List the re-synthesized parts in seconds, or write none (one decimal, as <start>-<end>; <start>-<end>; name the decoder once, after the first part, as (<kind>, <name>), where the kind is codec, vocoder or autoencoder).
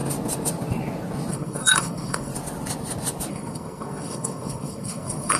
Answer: 1.3-2.3 (codec, SNAC); 3.3-5.4